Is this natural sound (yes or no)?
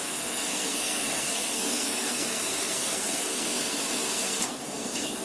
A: no